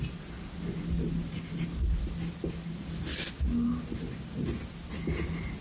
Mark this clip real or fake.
real